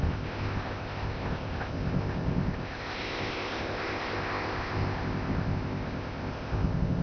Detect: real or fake fake